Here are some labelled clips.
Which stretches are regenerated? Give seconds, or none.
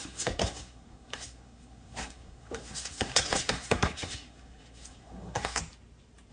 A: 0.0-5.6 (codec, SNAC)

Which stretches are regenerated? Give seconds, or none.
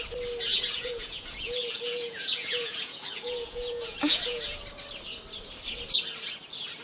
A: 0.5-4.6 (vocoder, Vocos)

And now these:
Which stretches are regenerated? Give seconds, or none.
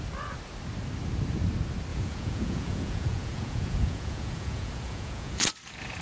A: 1.9-5.5 (vocoder, Vocos)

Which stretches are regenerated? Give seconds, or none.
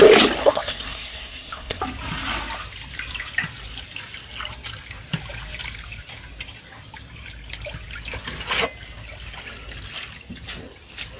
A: 0.4-1.8 (codec, SNAC)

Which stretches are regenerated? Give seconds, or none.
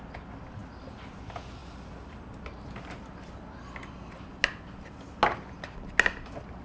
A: 0.6-1.2 (vocoder, BigVGAN v2); 1.6-2.8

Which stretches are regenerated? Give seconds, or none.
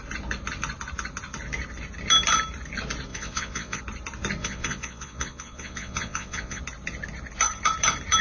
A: 3.1-3.8 (vocoder, Vocos); 4.4-6.6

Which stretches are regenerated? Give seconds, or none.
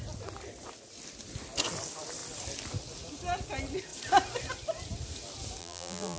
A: 5.6-6.2 (vocoder, BigVGAN v2)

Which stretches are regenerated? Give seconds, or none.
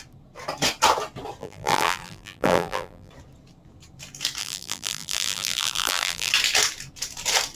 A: 1.4-3.1 (vocoder, BigVGAN v2); 4.4-6.3